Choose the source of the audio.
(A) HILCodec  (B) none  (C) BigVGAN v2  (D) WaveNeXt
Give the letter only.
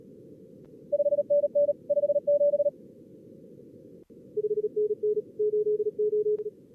B